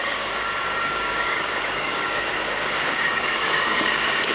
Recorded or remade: remade